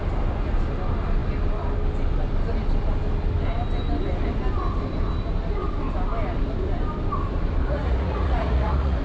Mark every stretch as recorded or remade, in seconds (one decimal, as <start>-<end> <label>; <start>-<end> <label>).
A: 0.0-7.6 recorded; 7.6-9.0 remade